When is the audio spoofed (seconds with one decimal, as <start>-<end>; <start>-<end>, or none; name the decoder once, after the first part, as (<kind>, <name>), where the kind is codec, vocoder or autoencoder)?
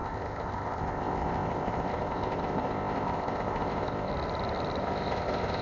0.0-4.1 (codec, ZipCodec); 4.8-5.6